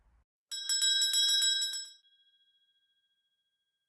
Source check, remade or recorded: recorded